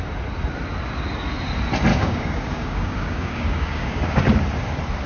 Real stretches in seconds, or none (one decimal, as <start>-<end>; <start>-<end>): 0.0-1.9; 4.2-5.1